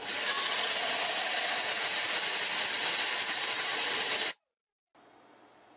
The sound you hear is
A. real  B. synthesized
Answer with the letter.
A